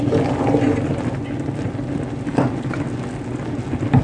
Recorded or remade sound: recorded